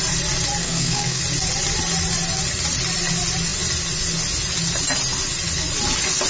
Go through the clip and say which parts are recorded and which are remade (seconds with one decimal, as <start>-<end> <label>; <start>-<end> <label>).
0.0-0.6 recorded; 0.6-1.2 remade; 1.2-6.3 recorded